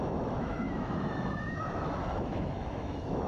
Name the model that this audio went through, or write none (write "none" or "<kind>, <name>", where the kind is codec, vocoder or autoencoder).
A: autoencoder, DAC-VAE